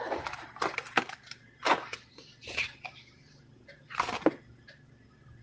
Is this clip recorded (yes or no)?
no